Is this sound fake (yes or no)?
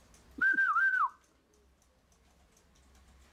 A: no